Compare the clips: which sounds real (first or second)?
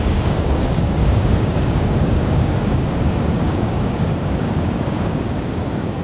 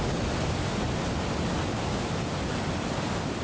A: second